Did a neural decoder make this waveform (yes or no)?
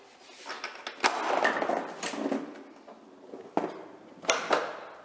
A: no